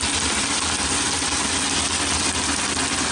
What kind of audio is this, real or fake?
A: real